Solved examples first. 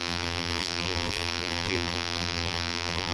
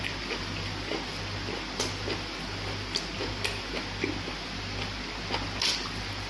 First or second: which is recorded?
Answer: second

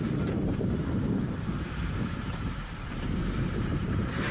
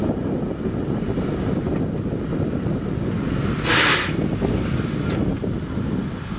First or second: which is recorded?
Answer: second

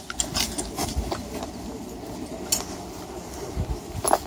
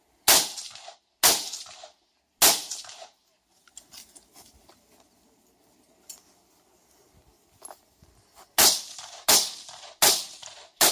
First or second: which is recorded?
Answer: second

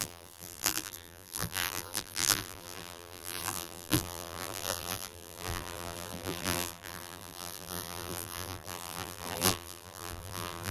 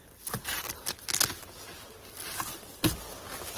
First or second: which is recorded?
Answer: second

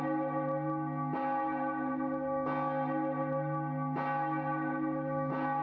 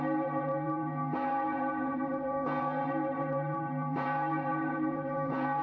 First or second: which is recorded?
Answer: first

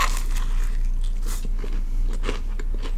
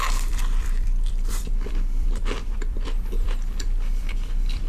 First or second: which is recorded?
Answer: first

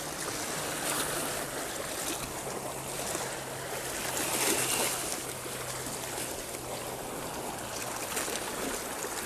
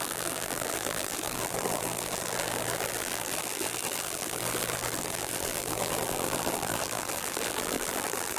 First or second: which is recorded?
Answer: first